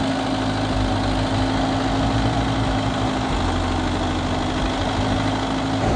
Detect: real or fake real